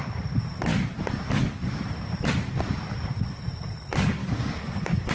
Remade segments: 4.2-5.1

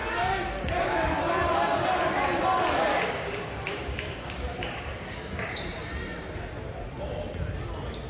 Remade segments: 0.0-1.2; 2.9-5.5